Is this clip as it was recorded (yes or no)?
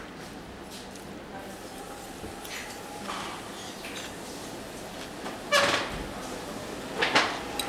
yes